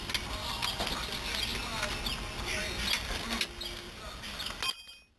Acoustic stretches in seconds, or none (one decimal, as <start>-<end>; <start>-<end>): 0.0-5.2